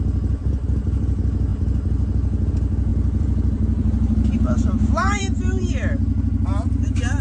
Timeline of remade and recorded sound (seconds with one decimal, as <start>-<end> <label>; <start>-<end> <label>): 0.0-2.9 recorded; 2.9-5.7 remade; 5.7-7.2 recorded